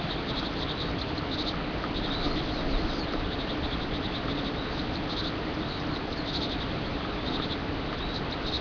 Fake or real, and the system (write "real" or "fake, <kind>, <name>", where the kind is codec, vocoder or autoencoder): real